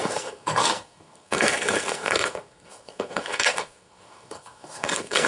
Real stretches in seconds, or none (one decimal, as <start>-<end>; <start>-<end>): none